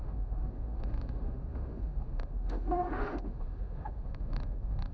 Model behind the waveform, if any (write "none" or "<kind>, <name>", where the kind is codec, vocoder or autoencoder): autoencoder, DAC-VAE